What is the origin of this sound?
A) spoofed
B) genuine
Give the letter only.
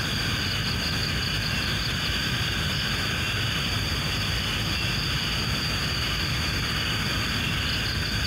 B